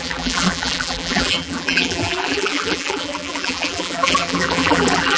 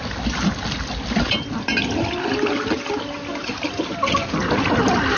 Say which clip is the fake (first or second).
first